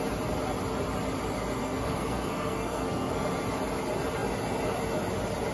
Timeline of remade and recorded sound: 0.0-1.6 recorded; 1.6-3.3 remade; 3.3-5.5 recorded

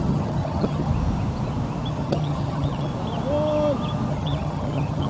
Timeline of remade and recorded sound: 0.0-0.9 remade; 0.9-1.9 recorded; 1.9-2.9 remade; 2.9-4.1 recorded; 4.1-5.1 remade

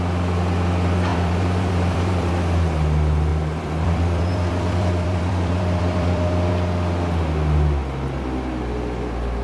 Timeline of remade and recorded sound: 0.0-1.1 recorded; 1.1-2.3 remade; 2.3-3.3 recorded; 3.3-6.5 remade; 6.5-9.4 recorded

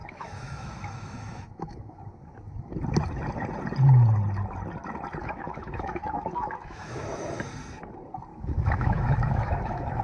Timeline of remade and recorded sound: 0.0-2.0 remade; 2.0-5.2 recorded; 5.2-7.0 remade; 7.0-8.3 recorded; 8.3-10.0 remade

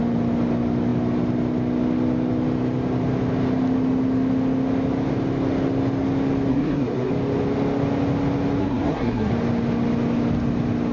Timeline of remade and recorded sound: 0.0-6.5 recorded; 6.5-7.1 remade; 7.1-8.6 recorded; 8.6-9.3 remade; 9.3-10.9 recorded

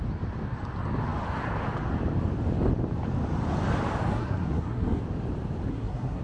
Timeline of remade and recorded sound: 0.0-4.1 recorded; 4.1-5.0 remade; 5.0-5.7 recorded; 5.7-6.2 remade

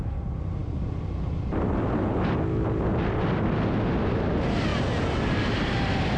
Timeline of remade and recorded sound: 0.0-6.2 recorded